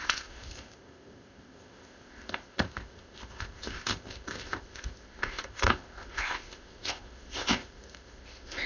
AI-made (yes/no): yes